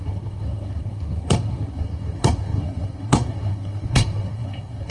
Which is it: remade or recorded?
remade